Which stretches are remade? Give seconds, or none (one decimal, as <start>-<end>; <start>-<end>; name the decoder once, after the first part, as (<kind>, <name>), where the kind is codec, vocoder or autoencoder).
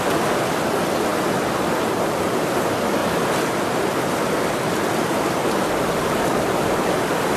none